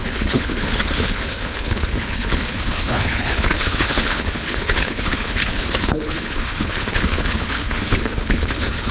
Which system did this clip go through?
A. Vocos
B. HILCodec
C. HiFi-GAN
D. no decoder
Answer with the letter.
B